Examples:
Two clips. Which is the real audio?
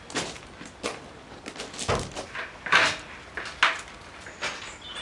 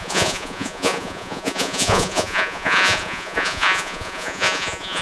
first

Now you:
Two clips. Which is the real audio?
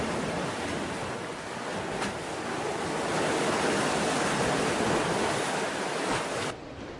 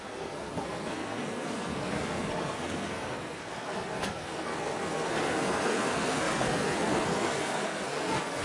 first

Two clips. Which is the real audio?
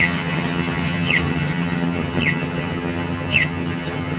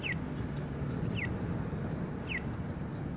second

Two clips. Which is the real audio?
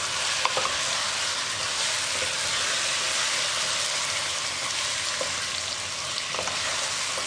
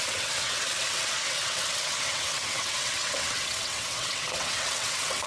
first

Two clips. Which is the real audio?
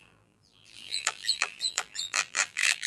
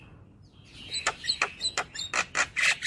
second